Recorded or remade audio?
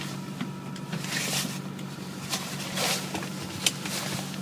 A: recorded